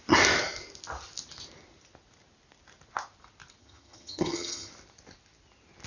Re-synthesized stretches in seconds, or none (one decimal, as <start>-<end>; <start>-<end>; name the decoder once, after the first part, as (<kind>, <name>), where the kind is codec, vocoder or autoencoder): 3.6-4.7 (vocoder, HiFi-GAN)